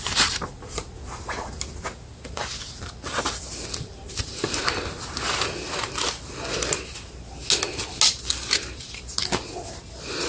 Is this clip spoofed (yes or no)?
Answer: no